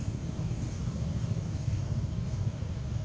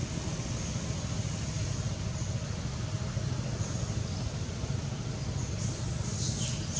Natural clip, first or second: second